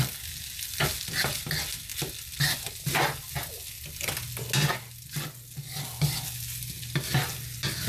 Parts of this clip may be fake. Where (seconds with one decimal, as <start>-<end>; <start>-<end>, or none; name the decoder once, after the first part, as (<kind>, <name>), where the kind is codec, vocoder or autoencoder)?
none